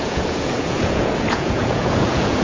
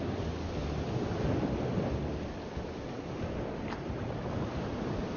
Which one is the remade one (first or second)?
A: first